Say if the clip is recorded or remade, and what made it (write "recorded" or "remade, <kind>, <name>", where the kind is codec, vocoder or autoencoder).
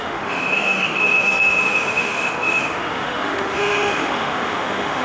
remade, autoencoder, DAC-VAE